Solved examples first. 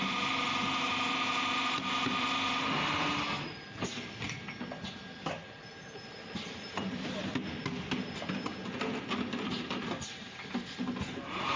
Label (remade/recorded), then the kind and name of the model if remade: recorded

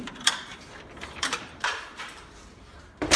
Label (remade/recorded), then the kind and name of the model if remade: remade, vocoder, BigVGAN v2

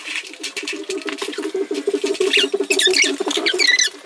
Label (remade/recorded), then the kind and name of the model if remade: recorded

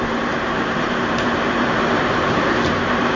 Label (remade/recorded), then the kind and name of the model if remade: remade, vocoder, BigVGAN v2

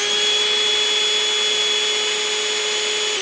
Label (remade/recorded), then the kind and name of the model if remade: recorded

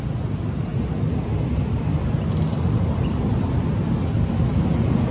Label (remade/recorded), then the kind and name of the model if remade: remade, vocoder, BigVGAN v2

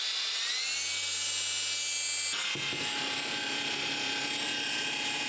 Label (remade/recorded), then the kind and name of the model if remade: recorded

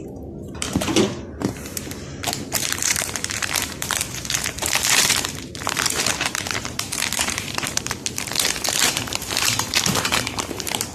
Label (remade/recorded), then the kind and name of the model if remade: remade, vocoder, BigVGAN v2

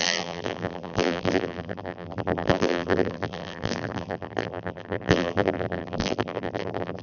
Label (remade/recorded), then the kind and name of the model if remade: remade, vocoder, BigVGAN v2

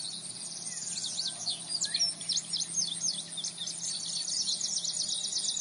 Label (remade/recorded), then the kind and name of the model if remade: recorded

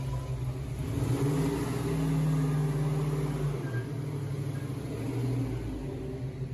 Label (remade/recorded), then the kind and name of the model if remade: recorded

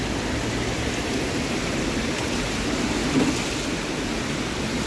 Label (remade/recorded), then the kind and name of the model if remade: recorded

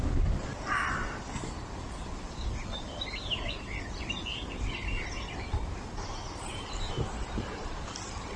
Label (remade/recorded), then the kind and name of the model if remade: remade, vocoder, BigVGAN v2